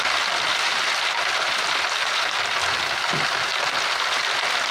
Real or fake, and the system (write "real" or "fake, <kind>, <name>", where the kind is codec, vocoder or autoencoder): real